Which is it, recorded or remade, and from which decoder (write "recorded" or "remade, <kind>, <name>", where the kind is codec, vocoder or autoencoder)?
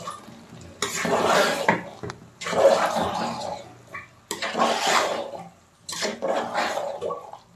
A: recorded